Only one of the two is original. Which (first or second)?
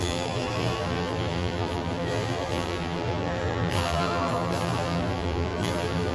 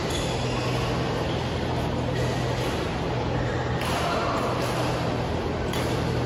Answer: second